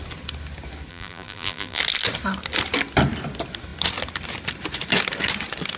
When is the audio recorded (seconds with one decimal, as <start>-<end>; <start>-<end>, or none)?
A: 0.0-0.9; 1.8-5.8

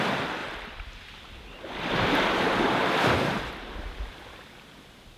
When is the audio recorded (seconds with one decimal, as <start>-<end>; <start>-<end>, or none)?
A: 0.0-0.4; 3.5-5.2